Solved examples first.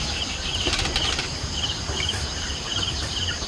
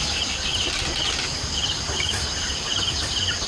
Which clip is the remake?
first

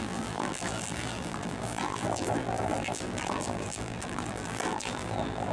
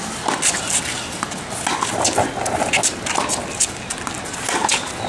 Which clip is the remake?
first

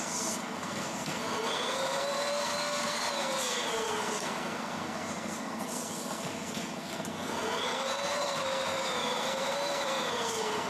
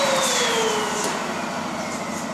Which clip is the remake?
first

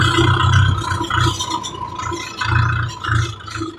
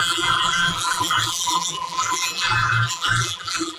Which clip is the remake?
second